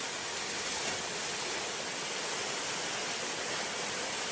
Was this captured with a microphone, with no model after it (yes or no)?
yes